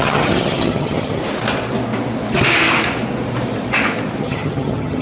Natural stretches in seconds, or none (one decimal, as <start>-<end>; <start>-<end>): 1.2-4.2